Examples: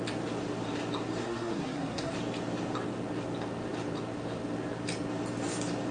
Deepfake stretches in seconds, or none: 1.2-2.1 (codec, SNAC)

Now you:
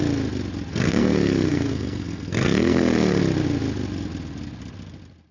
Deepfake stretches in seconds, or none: 0.7-3.2 (codec, SNAC)

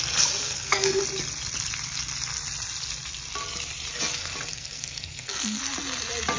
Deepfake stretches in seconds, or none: 0.4-1.0 (codec, SNAC); 4.5-5.6

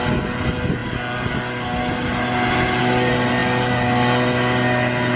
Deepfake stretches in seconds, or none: none

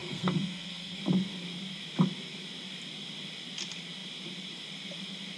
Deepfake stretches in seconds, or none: 0.0-1.0 (codec, SNAC)